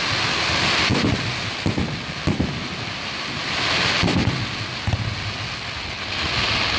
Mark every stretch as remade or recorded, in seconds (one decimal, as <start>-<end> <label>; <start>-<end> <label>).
0.0-6.8 recorded